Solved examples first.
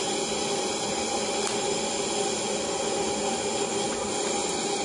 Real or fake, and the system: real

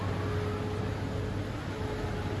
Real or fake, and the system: real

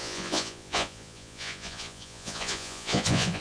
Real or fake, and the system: fake, vocoder, Vocos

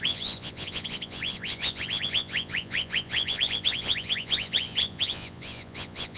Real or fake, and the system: fake, vocoder, Vocos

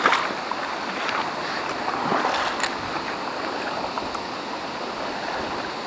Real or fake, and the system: real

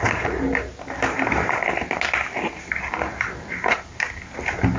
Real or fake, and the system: real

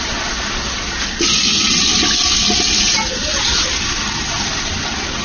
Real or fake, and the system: real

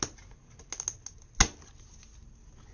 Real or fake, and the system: real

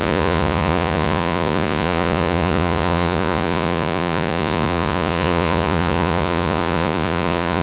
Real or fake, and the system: fake, vocoder, Vocos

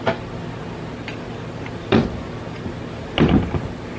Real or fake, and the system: real